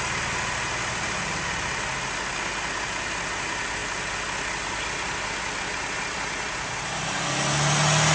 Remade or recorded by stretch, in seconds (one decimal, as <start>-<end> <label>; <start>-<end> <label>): 0.0-8.1 recorded